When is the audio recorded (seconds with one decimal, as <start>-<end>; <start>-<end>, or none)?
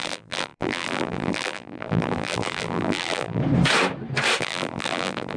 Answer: 3.4-4.4